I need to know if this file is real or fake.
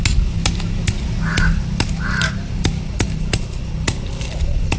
real